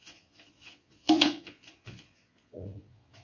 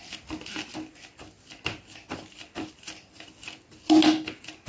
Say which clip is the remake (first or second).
first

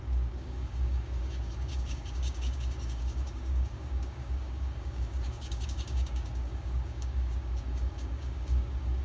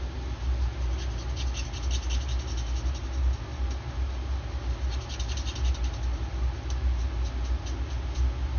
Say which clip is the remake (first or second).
first